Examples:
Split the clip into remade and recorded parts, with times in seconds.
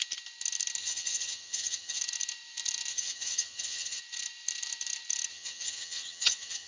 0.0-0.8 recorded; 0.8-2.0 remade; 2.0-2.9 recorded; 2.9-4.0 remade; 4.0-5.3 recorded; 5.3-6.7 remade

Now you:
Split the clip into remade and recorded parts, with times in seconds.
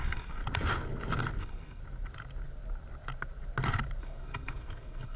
0.0-0.4 remade; 0.4-1.4 recorded; 1.4-1.8 remade; 1.8-4.0 recorded; 4.0-5.2 remade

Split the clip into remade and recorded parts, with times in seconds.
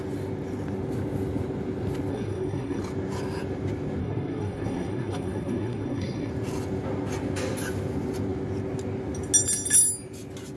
0.0-2.1 recorded; 2.1-2.8 remade; 2.8-4.0 recorded; 4.0-6.3 remade; 6.3-10.6 recorded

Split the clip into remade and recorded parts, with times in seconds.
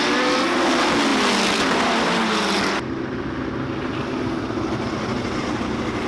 0.0-6.1 recorded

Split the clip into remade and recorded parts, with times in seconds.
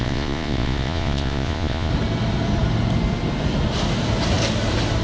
0.0-1.9 remade; 1.9-5.0 recorded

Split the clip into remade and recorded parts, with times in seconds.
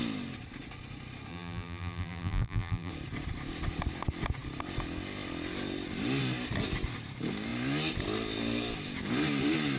0.0-1.3 recorded; 1.3-2.9 remade; 2.9-9.8 recorded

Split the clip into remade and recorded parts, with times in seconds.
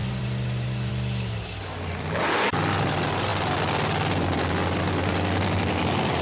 0.0-0.9 remade; 0.9-6.2 recorded